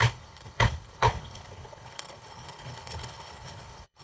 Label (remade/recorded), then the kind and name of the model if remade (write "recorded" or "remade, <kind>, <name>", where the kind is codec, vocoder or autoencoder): remade, codec, HILCodec